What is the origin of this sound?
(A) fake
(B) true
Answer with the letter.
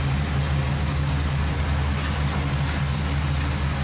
B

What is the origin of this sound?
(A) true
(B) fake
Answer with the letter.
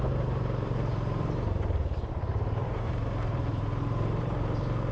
B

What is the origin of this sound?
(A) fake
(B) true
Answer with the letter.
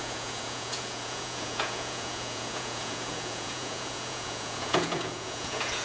A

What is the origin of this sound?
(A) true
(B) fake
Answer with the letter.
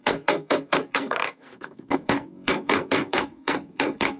B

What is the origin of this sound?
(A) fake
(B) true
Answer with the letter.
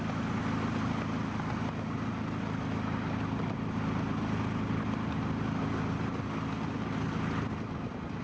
B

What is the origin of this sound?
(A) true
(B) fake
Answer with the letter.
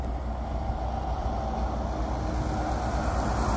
A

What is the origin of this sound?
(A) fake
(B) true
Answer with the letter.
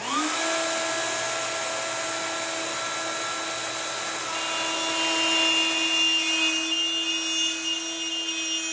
B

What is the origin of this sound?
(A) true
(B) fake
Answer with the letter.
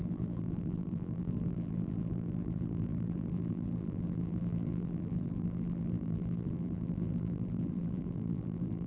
B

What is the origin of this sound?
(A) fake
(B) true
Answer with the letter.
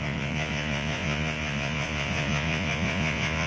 A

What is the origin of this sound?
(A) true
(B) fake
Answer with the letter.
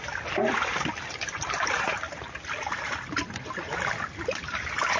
A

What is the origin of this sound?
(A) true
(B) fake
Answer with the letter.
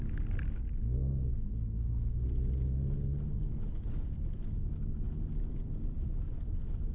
A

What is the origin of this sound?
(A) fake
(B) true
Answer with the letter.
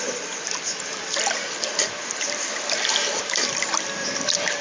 B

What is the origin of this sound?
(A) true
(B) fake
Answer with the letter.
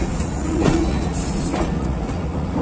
B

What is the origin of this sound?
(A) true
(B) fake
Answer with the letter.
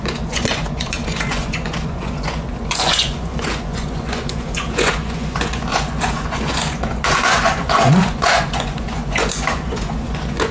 B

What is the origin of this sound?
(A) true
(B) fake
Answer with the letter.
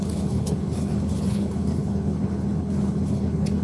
B